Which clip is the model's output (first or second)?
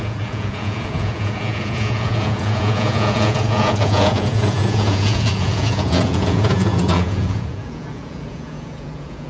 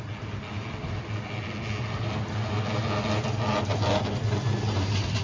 first